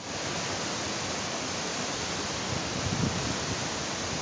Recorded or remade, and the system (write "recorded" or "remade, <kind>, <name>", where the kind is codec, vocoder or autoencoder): recorded